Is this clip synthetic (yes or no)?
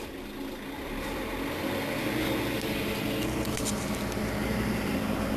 no